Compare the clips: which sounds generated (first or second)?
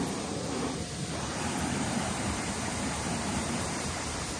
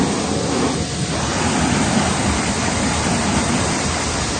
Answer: first